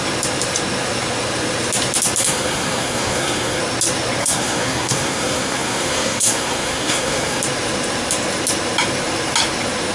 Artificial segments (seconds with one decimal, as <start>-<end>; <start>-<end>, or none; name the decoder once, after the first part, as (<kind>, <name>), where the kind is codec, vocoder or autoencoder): 2.2-3.6 (codec, SNAC); 4.2-7.4